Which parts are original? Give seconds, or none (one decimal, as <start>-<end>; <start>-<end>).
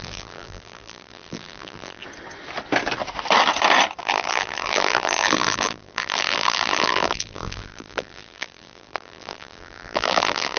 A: 2.0-4.0